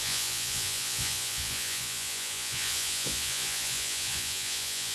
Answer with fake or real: fake